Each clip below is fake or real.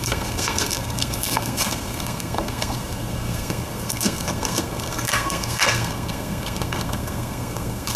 fake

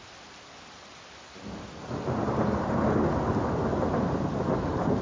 real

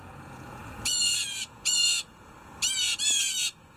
fake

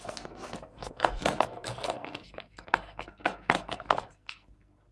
fake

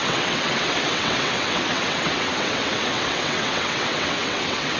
fake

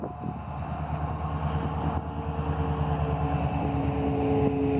real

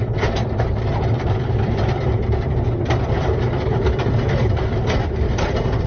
fake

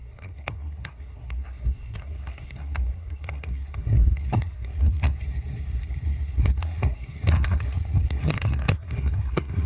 fake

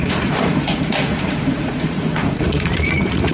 fake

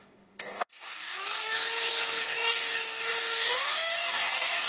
fake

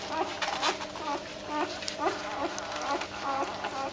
real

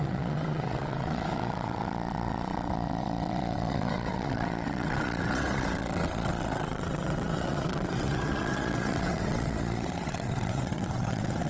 fake